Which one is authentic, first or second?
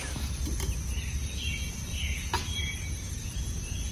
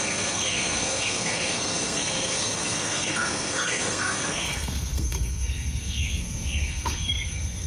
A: first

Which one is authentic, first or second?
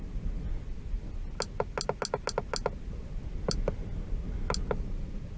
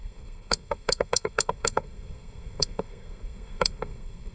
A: first